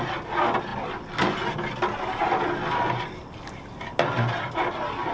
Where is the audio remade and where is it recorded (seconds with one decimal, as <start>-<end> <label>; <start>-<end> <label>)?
0.0-5.1 recorded